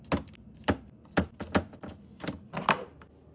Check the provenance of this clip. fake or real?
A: real